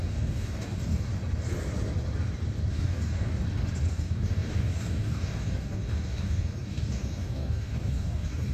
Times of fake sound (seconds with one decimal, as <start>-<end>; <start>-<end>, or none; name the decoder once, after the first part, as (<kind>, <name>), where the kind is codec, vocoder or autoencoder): 0.0-1.1 (codec, DAC); 2.7-3.3; 3.9-8.5